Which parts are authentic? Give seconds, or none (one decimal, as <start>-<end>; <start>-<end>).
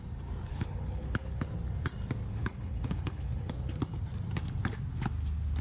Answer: 0.0-0.5; 1.4-2.3; 3.5-5.6